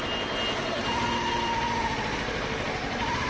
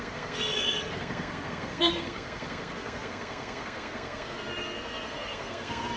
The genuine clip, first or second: first